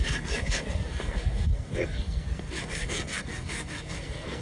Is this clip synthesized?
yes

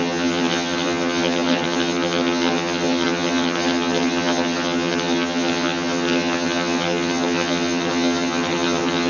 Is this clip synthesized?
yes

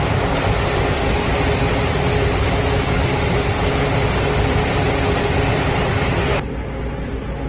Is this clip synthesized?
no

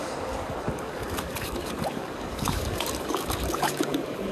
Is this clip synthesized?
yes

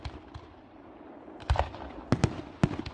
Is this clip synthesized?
no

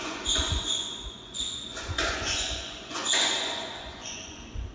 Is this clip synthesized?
yes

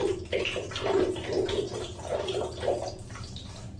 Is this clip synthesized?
no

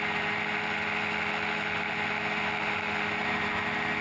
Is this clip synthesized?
no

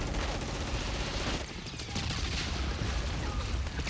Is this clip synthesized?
no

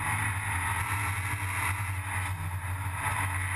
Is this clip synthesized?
no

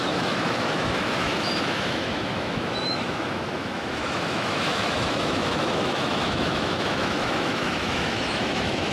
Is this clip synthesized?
yes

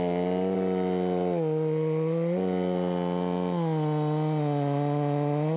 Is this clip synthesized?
no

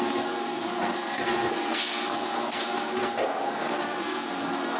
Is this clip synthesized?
yes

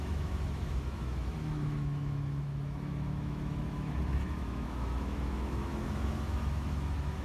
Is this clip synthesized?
yes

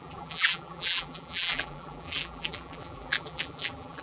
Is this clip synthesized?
yes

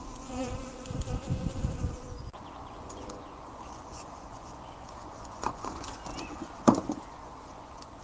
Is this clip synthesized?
yes